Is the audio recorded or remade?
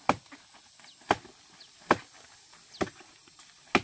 recorded